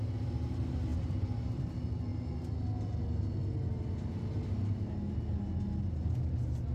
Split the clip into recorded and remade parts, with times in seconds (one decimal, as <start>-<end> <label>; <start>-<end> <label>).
0.0-0.9 recorded; 0.9-1.6 remade; 1.6-6.7 recorded